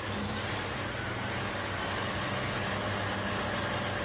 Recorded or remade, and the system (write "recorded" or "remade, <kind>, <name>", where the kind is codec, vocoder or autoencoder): recorded